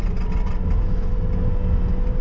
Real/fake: real